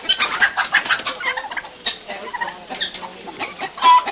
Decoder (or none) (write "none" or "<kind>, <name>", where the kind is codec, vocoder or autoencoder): none